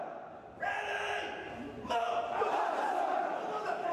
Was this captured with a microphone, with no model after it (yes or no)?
no